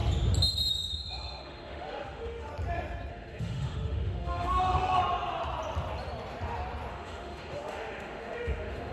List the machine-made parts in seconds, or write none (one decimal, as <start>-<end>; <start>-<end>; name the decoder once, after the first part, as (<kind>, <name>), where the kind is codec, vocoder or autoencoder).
0.7-2.5 (autoencoder, DAC-VAE); 3.1-5.0; 6.9-8.9